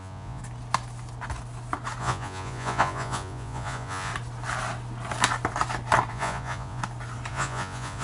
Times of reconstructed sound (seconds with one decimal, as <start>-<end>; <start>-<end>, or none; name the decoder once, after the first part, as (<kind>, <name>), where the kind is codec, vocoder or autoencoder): 0.0-0.4 (vocoder, Vocos); 2.0-4.1; 6.1-6.8; 7.3-8.0